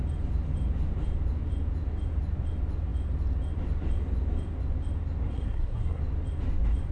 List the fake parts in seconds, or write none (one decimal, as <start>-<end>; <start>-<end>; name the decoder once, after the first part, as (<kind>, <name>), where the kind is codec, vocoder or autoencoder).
5.3-6.0 (codec, SNAC)